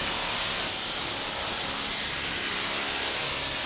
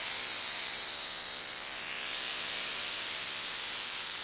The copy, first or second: second